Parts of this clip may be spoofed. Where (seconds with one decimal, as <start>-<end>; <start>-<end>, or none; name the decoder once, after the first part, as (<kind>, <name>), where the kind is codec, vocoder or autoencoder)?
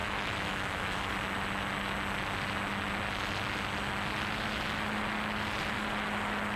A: 0.0-1.1 (autoencoder, DAC-VAE)